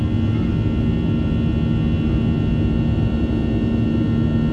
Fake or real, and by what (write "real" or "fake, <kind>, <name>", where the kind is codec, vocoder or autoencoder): real